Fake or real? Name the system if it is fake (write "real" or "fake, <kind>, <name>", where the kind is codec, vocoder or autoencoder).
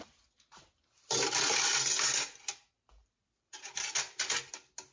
real